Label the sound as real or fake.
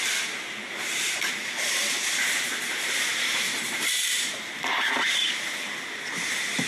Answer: fake